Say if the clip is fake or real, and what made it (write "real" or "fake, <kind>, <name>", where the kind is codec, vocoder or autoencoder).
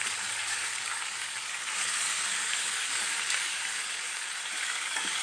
fake, codec, DAC